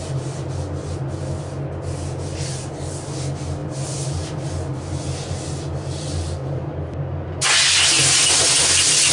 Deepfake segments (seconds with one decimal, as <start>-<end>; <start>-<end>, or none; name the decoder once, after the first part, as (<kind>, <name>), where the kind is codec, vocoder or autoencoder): none